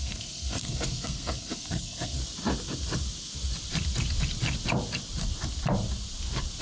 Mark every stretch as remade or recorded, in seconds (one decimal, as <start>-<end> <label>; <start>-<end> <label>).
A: 0.0-2.2 remade; 2.2-6.6 recorded